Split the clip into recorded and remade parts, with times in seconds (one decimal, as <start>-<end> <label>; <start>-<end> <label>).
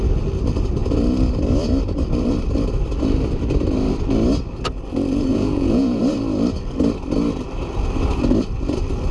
0.0-5.3 recorded; 5.3-6.0 remade; 6.0-9.1 recorded